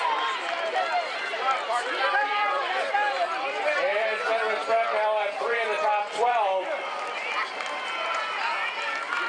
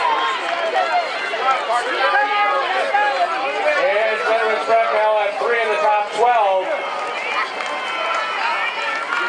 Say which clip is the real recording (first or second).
second